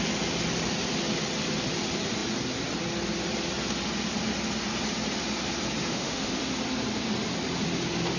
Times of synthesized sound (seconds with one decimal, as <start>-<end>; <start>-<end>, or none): 5.9-6.4